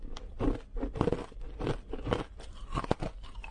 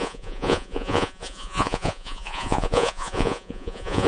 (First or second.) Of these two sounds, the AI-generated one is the second